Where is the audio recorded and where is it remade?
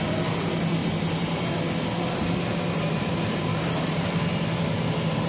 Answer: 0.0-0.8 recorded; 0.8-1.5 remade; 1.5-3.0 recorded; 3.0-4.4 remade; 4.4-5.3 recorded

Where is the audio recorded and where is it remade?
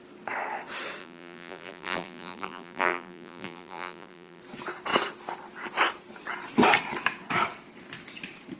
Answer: 0.0-1.0 recorded; 1.0-4.4 remade; 4.4-8.6 recorded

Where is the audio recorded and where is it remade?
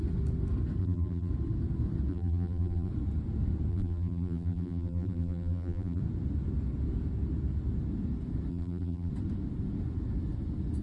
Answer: 0.0-0.8 recorded; 0.8-1.3 remade; 1.3-2.1 recorded; 2.1-2.9 remade; 2.9-3.7 recorded; 3.7-6.0 remade; 6.0-8.5 recorded; 8.5-9.1 remade; 9.1-10.8 recorded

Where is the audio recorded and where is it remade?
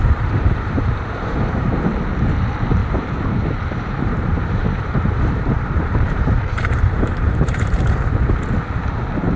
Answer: 0.0-1.9 remade; 1.9-2.8 recorded; 2.8-8.0 remade; 8.0-9.4 recorded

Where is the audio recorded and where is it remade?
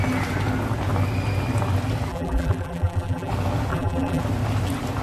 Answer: 0.0-2.1 recorded; 2.1-3.3 remade; 3.3-3.7 recorded; 3.7-4.2 remade; 4.2-5.0 recorded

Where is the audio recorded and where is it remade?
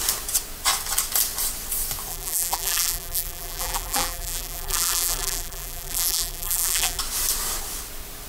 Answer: 0.0-2.1 recorded; 2.1-7.0 remade; 7.0-8.3 recorded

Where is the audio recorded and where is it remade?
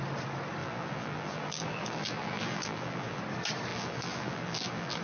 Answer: 0.0-0.6 recorded; 0.6-3.2 remade; 3.2-3.7 recorded; 3.7-5.0 remade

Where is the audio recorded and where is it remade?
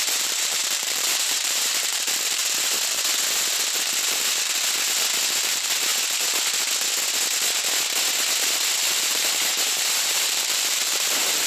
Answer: 0.0-2.4 remade; 2.4-5.4 recorded; 5.4-5.9 remade; 5.9-9.0 recorded; 9.0-11.5 remade